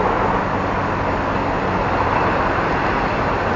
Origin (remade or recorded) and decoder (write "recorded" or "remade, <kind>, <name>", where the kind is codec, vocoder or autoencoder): recorded